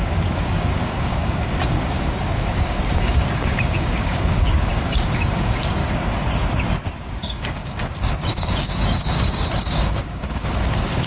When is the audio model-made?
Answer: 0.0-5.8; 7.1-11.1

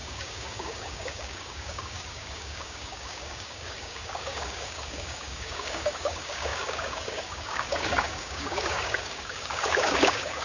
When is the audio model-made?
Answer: 0.0-10.4

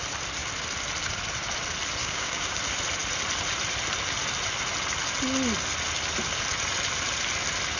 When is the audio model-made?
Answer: 2.0-2.6

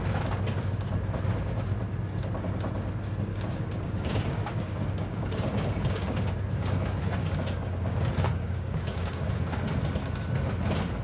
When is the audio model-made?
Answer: 3.3-6.3; 7.2-9.3

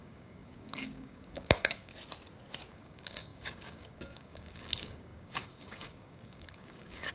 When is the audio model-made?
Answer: 0.0-1.9; 2.7-7.1

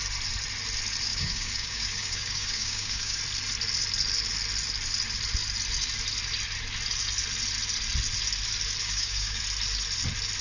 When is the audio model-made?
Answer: 1.1-3.2; 8.8-9.4

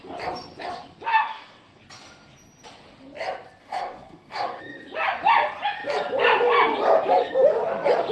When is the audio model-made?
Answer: 1.1-1.8; 3.6-4.6

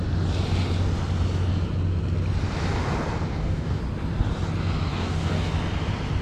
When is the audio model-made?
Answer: 3.3-3.8; 4.9-5.5